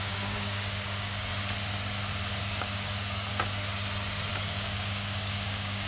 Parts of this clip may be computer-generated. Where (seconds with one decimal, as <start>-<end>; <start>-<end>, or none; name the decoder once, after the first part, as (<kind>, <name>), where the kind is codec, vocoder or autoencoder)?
0.0-1.3 (codec, DAC); 2.4-3.3; 4.3-5.9

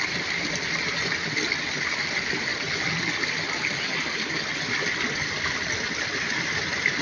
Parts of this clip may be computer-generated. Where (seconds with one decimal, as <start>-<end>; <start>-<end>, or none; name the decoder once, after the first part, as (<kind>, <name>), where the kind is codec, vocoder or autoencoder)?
none

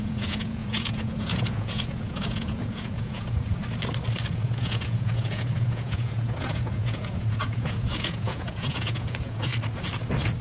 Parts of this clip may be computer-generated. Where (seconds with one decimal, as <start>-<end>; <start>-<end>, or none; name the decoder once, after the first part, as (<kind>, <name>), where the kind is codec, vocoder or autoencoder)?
0.0-3.6 (vocoder, Vocos); 4.3-9.5